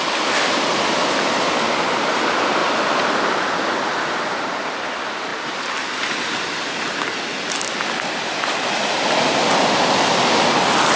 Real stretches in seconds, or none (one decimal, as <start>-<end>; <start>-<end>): 0.0-11.0